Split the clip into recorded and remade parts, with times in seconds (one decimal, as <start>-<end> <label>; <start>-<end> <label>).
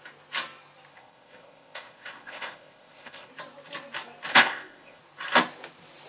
0.0-0.9 recorded; 0.9-3.3 remade; 3.3-4.3 recorded; 4.3-5.0 remade; 5.0-6.1 recorded